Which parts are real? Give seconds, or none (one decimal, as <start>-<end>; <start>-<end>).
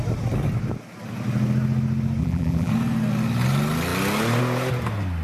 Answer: 0.0-2.2; 2.7-5.2